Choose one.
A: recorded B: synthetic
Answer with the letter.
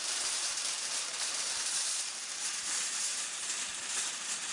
B